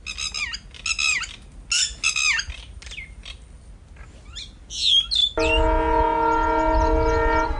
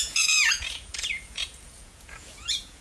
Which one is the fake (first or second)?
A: second